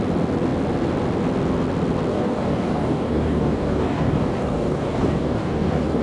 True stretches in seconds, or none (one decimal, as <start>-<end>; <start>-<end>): 0.0-2.1